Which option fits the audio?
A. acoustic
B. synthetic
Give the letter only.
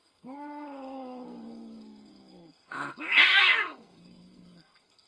B